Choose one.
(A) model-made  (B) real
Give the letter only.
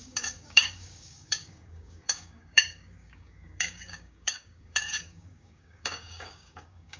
A